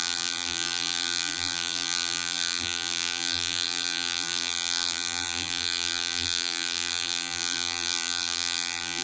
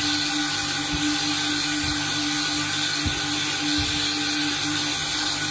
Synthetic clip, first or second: first